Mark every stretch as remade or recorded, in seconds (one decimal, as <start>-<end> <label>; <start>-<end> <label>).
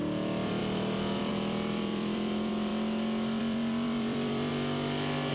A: 0.0-2.7 remade; 2.7-3.4 recorded; 3.4-4.5 remade; 4.5-5.3 recorded